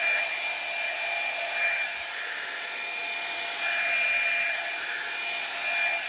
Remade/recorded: recorded